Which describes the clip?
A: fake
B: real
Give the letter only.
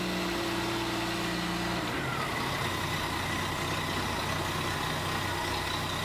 B